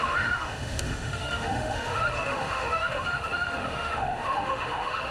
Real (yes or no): no